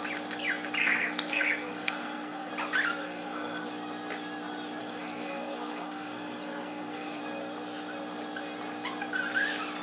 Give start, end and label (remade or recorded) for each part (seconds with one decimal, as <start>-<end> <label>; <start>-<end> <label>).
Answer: 0.0-0.8 recorded; 0.8-2.5 remade; 2.5-3.0 recorded; 3.0-3.6 remade; 3.6-4.8 recorded; 4.8-7.2 remade; 7.2-9.8 recorded